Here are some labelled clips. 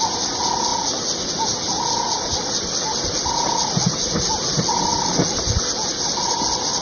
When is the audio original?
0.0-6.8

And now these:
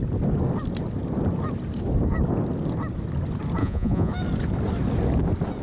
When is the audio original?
0.0-3.6; 4.1-5.6

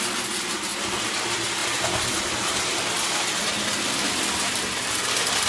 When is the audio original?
0.0-5.5

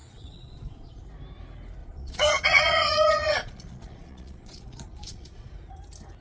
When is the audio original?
1.0-1.8; 5.5-6.2

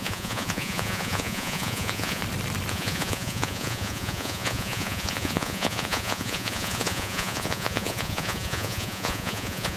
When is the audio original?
2.2-2.7